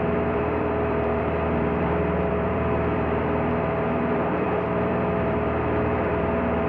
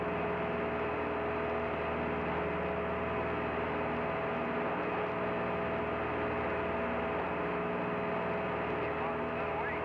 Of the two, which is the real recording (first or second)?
second